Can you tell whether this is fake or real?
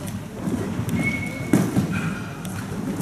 real